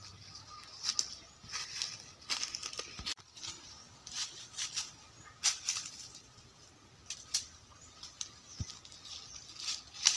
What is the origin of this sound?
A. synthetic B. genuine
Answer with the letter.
B